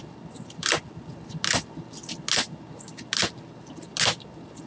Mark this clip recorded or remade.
recorded